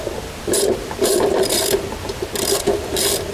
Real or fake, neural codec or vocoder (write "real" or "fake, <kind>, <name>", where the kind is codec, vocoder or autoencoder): fake, vocoder, BigVGAN v2